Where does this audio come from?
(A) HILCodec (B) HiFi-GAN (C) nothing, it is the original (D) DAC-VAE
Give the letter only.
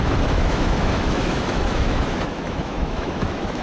D